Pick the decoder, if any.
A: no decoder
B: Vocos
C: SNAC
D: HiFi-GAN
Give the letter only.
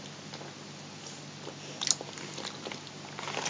A